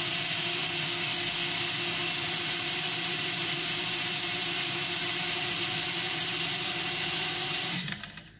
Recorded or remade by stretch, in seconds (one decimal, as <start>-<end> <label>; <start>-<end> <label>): 0.0-0.6 remade; 0.6-2.2 recorded; 2.2-8.4 remade